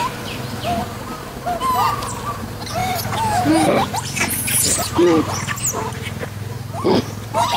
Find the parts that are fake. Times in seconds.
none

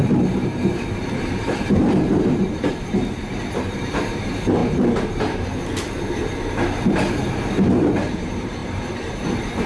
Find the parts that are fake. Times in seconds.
0.0-9.7 (vocoder, BigVGAN v2)